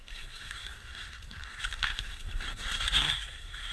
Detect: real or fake fake